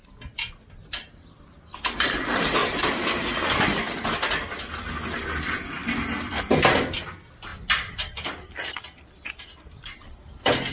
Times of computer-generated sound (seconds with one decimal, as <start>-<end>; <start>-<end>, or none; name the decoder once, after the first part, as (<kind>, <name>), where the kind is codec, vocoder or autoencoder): none